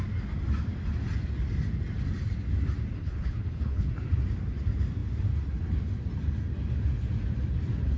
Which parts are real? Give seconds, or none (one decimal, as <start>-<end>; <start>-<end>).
0.0-3.0; 3.9-8.0